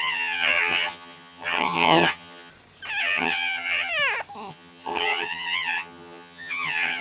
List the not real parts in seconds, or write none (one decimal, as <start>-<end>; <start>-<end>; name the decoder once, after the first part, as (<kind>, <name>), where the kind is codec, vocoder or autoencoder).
0.0-2.5 (vocoder, HiFi-GAN); 3.0-3.9; 4.5-7.0